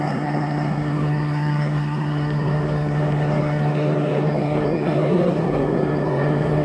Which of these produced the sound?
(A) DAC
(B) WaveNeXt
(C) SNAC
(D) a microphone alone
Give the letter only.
C